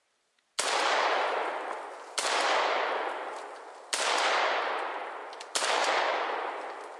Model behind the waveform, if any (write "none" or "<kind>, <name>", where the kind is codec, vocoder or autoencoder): none